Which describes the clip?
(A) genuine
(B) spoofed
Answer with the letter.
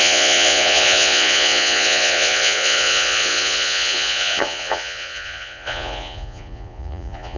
B